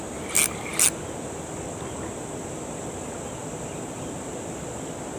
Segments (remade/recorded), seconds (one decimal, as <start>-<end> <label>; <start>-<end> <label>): 0.0-5.2 recorded